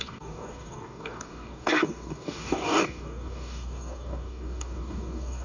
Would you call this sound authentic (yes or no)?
no